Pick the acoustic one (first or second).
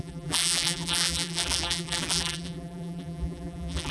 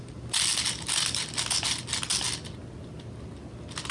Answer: second